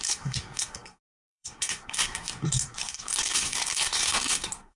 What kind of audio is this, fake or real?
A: fake